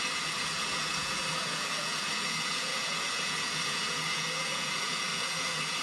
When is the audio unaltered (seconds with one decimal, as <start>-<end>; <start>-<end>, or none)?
none